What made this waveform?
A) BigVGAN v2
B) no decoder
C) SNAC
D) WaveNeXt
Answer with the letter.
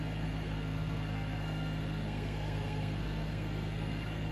C